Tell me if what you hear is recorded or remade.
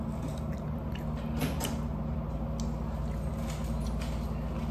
recorded